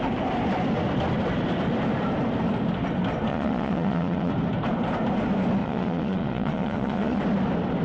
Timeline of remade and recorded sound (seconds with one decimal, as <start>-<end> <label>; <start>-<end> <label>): 0.0-3.3 recorded; 3.3-4.3 remade; 4.3-5.6 recorded; 5.6-7.2 remade; 7.2-7.8 recorded